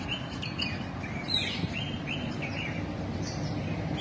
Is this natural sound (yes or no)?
yes